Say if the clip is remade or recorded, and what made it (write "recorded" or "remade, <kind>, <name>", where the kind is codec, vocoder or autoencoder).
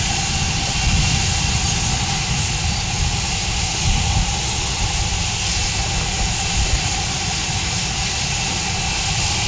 recorded